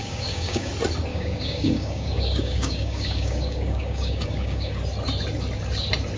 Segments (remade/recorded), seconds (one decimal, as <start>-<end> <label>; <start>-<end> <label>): 0.0-0.7 remade; 0.7-1.1 recorded; 1.1-4.8 remade; 4.8-6.2 recorded